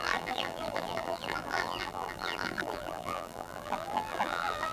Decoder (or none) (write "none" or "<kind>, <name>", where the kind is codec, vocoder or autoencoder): vocoder, BigVGAN v2